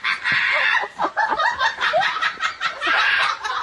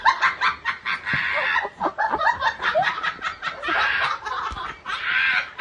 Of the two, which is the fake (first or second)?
first